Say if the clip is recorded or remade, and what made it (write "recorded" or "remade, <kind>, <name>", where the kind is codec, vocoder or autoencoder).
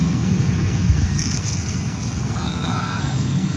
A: remade, codec, SNAC